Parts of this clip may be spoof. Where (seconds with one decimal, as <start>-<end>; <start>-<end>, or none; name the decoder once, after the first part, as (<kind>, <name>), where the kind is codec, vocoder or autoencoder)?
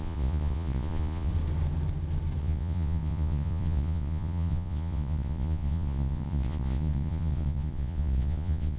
0.0-1.3 (vocoder, Vocos); 2.4-8.8